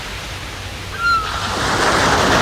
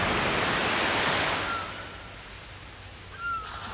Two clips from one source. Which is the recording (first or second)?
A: second